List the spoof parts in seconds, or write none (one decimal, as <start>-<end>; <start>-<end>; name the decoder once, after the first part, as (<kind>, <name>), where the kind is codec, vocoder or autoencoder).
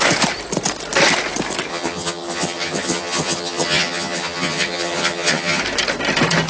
1.7-5.6 (vocoder, HiFi-GAN)